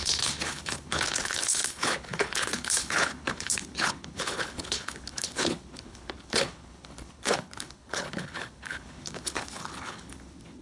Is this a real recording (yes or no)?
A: no